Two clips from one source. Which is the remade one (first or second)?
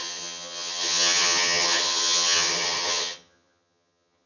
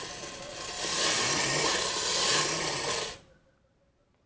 first